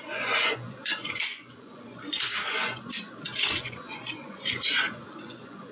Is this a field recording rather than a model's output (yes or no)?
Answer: no